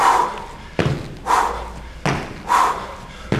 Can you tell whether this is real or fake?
real